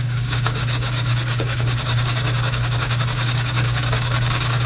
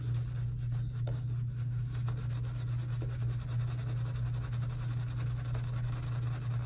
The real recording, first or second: second